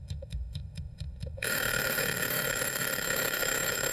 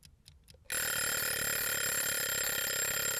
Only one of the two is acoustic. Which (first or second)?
second